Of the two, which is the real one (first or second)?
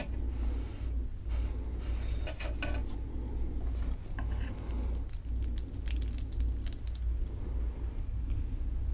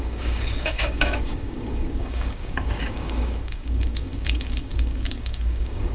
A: first